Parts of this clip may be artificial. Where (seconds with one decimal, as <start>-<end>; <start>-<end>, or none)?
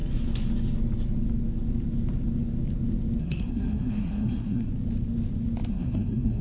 3.2-4.7; 5.7-6.4